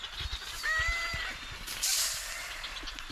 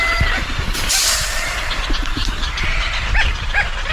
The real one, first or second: first